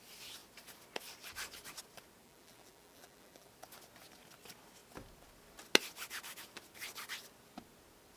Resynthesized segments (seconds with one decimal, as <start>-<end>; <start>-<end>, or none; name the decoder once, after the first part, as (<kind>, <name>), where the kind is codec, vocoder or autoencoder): 2.2-3.5 (vocoder, BigVGAN v2)